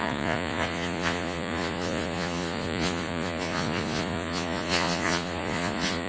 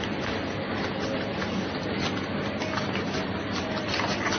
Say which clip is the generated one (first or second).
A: first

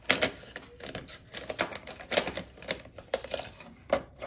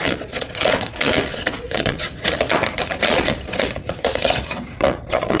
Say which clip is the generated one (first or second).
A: second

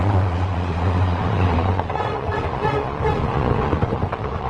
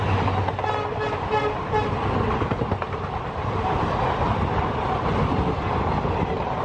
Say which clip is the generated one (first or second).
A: first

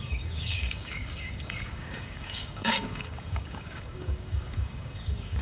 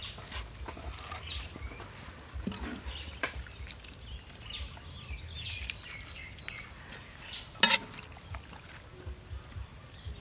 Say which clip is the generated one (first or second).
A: first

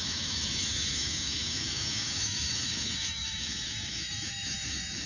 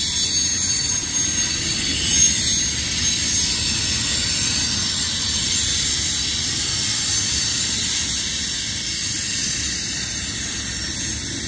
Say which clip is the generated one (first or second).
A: first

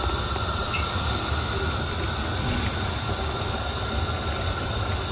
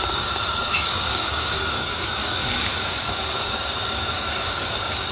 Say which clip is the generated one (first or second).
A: second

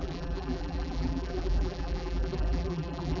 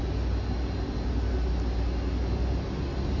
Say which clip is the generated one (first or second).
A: first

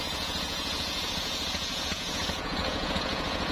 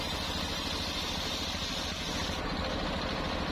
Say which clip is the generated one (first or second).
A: first